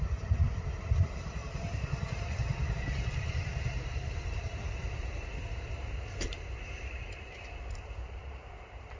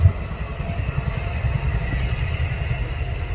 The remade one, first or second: first